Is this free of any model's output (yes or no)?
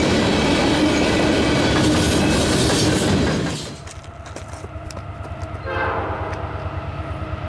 yes